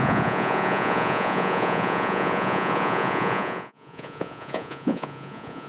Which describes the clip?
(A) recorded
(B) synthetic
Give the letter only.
B